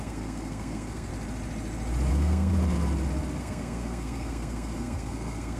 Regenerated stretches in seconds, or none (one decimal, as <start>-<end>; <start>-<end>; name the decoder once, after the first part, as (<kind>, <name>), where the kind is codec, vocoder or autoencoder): 0.0-1.1 (codec, SNAC); 2.1-2.5; 3.4-5.6